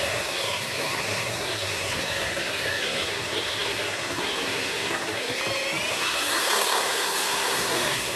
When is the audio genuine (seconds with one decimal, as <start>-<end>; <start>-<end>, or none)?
5.4-5.9